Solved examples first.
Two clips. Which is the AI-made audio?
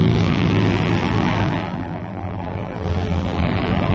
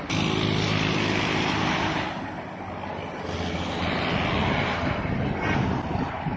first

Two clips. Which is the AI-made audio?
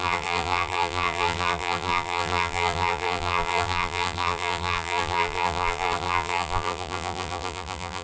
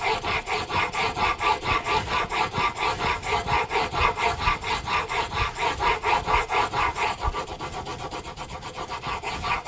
first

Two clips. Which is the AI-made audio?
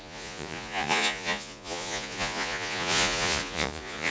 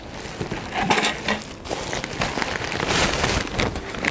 first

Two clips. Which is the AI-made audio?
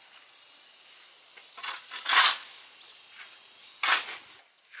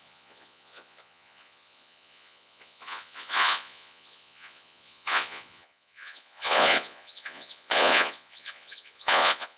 second